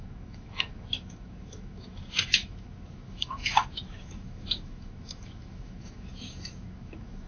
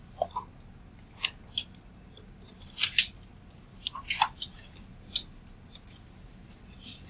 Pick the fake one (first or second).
first